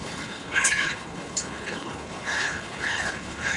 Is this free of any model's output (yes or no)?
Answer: no